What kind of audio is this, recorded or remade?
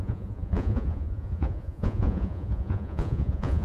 remade